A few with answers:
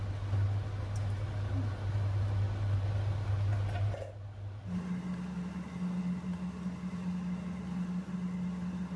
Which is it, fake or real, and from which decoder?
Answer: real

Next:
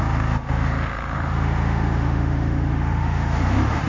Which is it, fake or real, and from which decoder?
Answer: fake, autoencoder, DAC-VAE